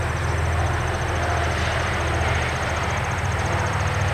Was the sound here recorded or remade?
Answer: recorded